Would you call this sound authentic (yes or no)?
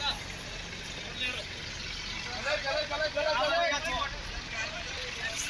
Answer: yes